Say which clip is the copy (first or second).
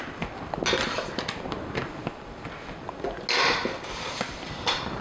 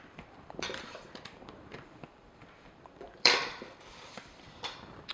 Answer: second